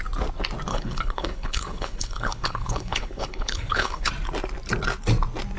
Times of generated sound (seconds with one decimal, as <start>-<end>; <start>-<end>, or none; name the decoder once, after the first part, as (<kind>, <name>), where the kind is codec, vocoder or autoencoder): 0.7-4.1 (codec, HILCodec)